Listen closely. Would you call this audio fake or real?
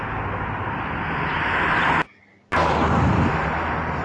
real